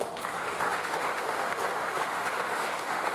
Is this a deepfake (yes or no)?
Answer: yes